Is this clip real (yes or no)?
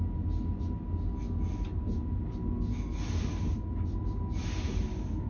yes